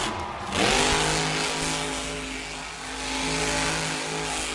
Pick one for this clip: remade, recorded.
recorded